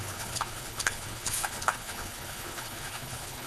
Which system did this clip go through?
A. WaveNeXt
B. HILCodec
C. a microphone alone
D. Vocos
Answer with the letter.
B